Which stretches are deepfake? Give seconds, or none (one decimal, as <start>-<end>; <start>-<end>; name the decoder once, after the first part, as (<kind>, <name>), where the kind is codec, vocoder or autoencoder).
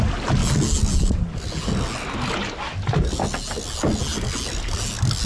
none